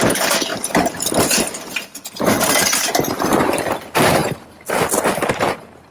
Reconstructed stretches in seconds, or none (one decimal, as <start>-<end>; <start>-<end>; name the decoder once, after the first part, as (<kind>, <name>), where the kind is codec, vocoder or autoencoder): 0.5-2.6 (vocoder, BigVGAN v2)